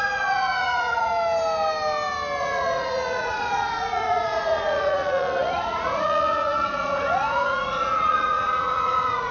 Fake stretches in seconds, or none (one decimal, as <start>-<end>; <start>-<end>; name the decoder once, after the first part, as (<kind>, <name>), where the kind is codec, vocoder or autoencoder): 0.0-1.1 (vocoder, Vocos); 2.4-9.3